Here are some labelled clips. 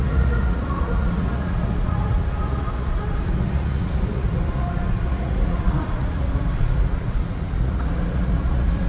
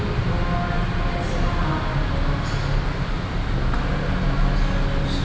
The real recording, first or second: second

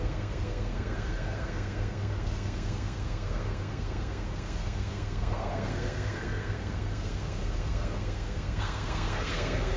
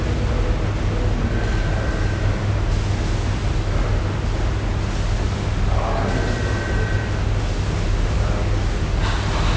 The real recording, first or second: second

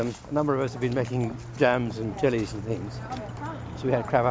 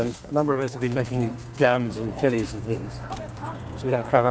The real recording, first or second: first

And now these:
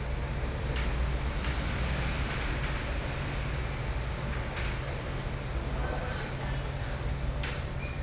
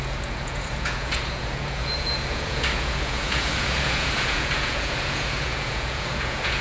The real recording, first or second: first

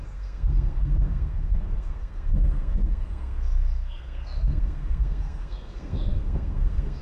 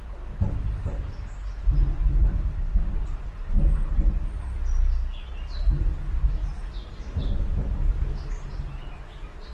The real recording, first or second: second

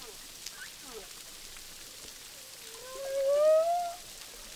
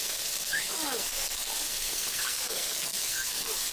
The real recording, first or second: first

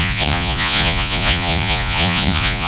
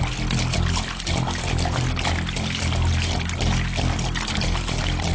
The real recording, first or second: second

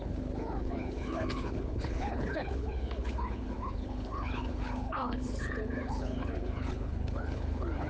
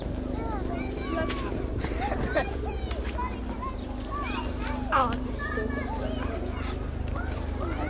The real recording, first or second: second